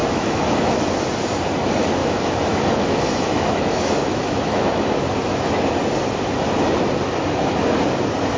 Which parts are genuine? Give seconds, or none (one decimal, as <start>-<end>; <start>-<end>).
0.8-2.0; 5.7-8.4